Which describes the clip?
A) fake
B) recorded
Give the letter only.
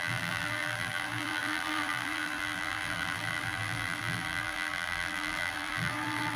A